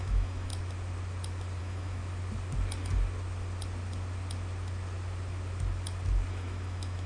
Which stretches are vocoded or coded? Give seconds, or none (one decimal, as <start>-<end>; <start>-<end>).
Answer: 0.0-0.5; 1.6-2.0; 6.3-7.1

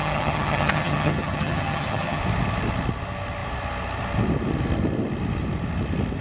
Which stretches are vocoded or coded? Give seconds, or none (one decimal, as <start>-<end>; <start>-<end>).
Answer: 0.0-2.2